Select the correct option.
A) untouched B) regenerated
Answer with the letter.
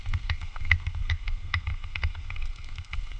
B